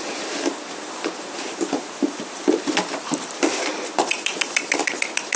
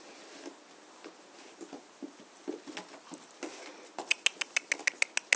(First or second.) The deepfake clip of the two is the first